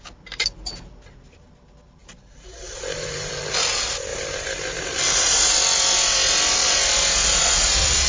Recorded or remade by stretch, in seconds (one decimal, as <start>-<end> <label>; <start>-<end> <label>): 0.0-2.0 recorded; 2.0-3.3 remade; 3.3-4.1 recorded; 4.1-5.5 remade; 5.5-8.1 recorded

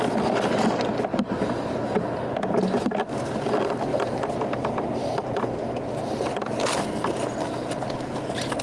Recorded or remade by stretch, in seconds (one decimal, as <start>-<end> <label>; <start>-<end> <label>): 0.0-1.1 recorded; 1.1-2.0 remade; 2.0-3.9 recorded; 3.9-5.1 remade; 5.1-8.6 recorded

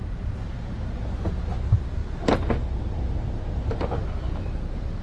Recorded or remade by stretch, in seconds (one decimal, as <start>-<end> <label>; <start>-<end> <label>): 0.0-5.0 recorded

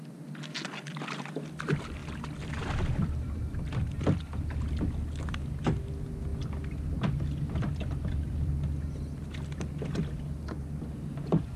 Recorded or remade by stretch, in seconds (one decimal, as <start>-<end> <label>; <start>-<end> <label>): 0.0-2.0 recorded; 2.0-4.8 remade; 4.8-6.3 recorded; 6.3-8.5 remade; 8.5-11.6 recorded